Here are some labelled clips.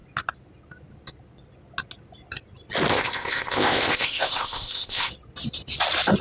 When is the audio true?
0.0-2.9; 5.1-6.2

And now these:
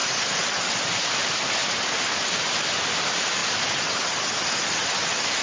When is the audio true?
0.0-5.4

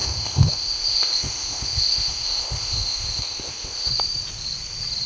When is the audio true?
3.9-5.1

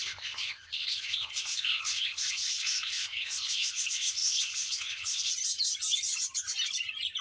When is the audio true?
5.3-7.2

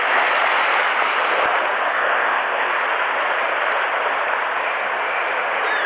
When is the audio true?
0.0-1.9; 2.7-5.9

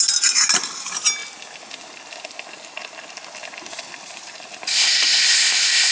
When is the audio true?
0.0-4.7